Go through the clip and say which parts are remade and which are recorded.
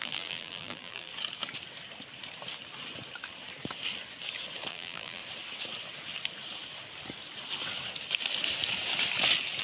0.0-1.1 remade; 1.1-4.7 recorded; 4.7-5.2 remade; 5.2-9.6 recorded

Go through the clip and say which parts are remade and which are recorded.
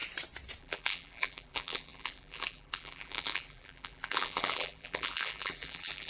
0.0-0.6 recorded; 0.6-6.1 remade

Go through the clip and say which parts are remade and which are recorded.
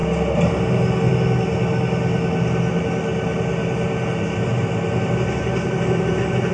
0.0-6.5 recorded